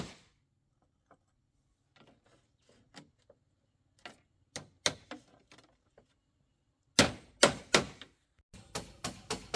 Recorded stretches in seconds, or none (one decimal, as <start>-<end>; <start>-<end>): 0.0-9.6